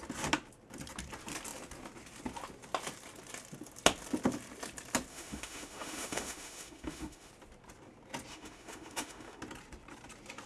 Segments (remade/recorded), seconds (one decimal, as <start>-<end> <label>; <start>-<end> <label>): 0.0-5.1 recorded; 5.1-7.3 remade; 7.3-8.3 recorded; 8.3-9.4 remade; 9.4-10.5 recorded